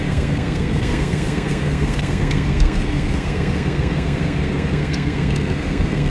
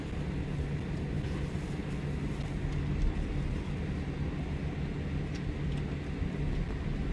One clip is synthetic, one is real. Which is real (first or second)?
second